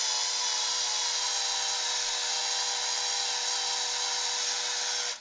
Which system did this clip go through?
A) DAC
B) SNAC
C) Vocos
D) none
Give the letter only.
D